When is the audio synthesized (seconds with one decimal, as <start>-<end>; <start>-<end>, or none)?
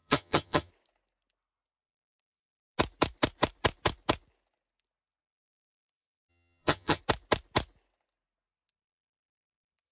0.0-0.7; 6.3-7.0